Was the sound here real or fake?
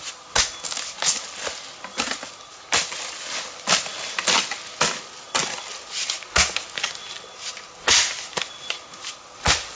real